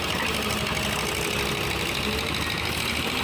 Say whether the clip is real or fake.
real